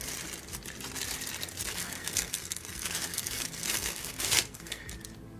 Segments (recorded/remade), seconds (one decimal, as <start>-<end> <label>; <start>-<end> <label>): 0.0-1.7 recorded; 1.7-4.9 remade; 4.9-5.4 recorded